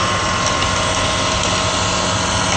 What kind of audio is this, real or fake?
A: real